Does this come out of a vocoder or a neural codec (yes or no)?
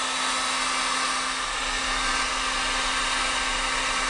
no